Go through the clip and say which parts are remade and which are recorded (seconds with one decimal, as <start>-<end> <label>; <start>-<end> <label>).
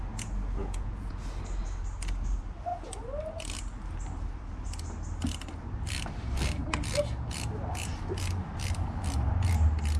0.0-0.6 recorded; 0.6-1.2 remade; 1.2-10.0 recorded